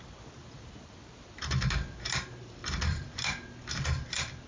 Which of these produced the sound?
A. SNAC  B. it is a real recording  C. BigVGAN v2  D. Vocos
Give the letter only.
B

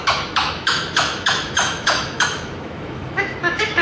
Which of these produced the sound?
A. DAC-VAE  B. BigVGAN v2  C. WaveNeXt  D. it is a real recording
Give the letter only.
A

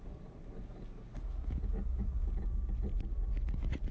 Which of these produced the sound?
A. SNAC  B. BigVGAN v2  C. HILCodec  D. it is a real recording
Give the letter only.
D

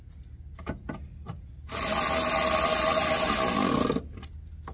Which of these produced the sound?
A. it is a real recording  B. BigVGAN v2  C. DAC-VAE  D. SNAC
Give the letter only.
A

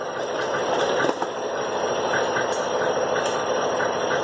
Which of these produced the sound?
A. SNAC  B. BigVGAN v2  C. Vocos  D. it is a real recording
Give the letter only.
D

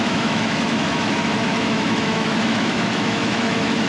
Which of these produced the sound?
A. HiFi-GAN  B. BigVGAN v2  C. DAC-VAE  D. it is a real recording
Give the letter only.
C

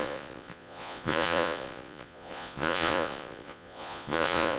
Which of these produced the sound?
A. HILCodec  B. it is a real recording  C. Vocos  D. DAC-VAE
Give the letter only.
C